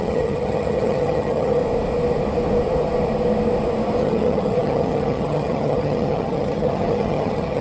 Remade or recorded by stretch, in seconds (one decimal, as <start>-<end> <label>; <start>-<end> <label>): 0.0-1.6 remade; 1.6-4.0 recorded; 4.0-7.6 remade